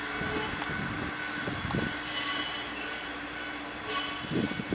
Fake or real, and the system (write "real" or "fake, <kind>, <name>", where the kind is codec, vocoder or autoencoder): real